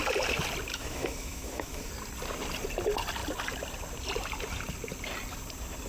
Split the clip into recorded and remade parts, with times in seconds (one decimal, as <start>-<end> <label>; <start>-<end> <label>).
0.0-0.7 recorded; 0.7-1.9 remade; 1.9-5.9 recorded